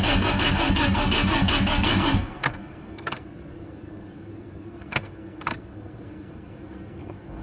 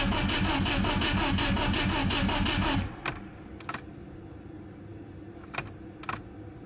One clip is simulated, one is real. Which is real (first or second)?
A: second